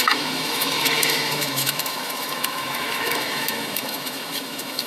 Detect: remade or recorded remade